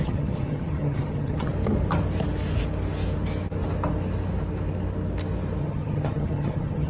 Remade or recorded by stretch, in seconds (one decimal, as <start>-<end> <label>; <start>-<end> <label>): 0.0-1.5 remade; 1.5-5.6 recorded; 5.6-6.9 remade